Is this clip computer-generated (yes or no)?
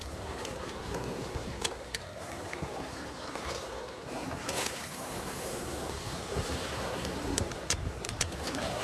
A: yes